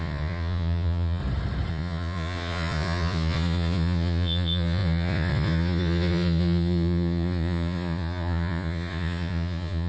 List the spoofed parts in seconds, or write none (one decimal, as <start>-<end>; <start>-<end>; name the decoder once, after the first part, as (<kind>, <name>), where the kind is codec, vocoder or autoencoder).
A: 0.0-1.2 (vocoder, Vocos); 1.7-9.9